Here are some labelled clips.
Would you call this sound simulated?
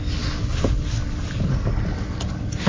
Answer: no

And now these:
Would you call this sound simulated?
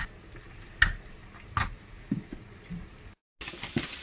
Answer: no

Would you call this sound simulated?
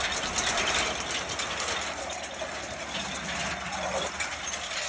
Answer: no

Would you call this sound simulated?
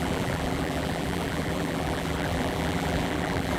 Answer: yes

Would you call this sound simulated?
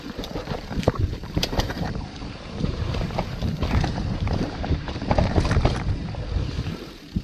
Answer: yes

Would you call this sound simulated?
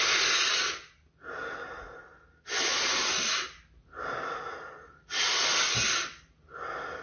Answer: no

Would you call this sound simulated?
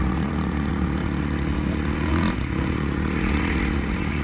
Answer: yes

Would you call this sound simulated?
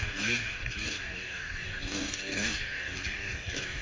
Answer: yes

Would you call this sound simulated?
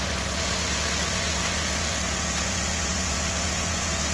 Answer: yes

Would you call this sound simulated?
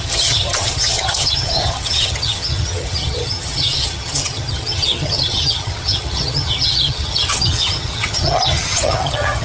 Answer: yes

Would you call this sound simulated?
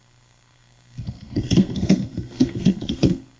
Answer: yes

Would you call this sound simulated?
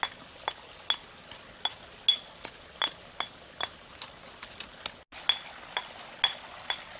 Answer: no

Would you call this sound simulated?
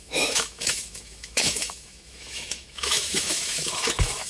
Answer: yes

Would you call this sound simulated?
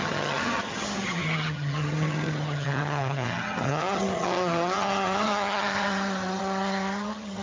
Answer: yes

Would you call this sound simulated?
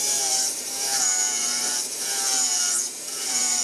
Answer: yes